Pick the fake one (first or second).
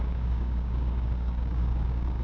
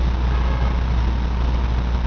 first